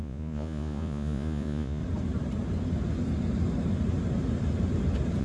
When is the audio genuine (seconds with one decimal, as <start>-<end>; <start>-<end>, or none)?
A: 1.8-5.2